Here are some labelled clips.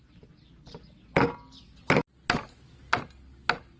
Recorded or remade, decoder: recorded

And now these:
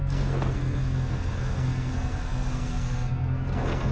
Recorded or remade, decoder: remade, codec, SNAC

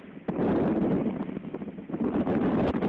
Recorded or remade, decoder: recorded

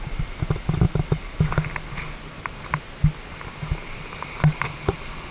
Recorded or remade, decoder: recorded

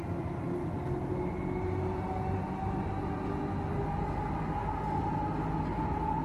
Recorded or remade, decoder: recorded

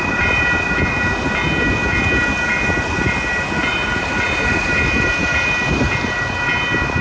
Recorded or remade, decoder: recorded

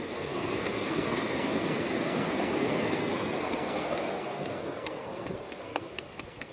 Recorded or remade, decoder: remade, codec, SNAC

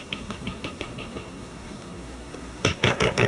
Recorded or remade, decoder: remade, codec, SNAC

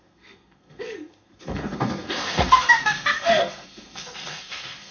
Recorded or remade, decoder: remade, codec, SNAC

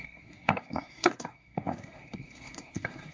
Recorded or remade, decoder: remade, codec, SNAC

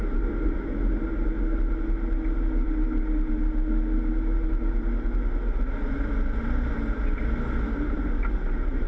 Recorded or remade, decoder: recorded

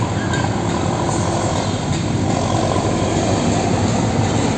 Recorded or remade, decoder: recorded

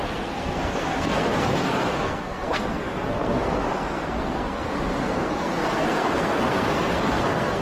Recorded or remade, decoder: remade, codec, SNAC